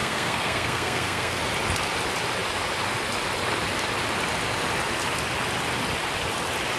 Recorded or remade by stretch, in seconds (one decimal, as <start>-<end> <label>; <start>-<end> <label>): 0.0-1.4 remade; 1.4-6.8 recorded